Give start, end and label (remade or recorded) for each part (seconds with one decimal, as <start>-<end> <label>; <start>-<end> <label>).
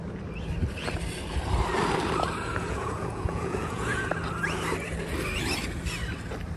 0.0-2.5 recorded; 2.5-4.1 remade; 4.1-6.6 recorded